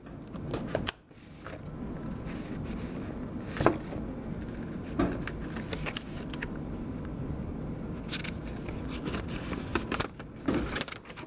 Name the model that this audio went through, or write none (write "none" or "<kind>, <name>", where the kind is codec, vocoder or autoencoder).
none